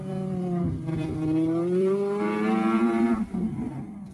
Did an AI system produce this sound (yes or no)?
yes